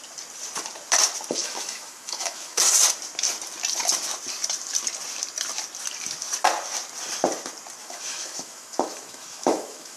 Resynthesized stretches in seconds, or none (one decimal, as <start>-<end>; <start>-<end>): 1.4-2.6; 7.8-10.0